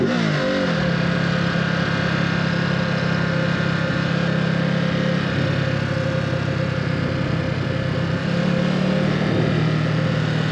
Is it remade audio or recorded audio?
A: recorded